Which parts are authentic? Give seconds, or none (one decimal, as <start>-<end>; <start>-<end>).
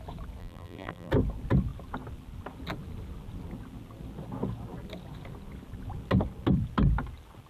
0.0-0.4; 1.1-7.5